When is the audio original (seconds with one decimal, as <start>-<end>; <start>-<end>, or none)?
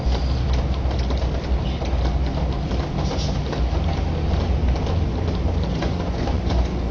0.0-5.7